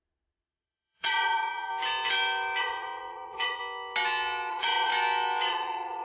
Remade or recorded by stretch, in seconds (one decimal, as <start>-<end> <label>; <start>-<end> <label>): 0.0-1.7 remade; 1.7-2.6 recorded; 2.6-3.6 remade; 3.6-4.5 recorded; 4.5-4.9 remade; 4.9-5.5 recorded; 5.5-6.0 remade